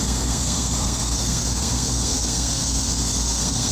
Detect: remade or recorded remade